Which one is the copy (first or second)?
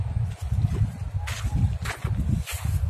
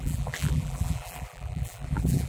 second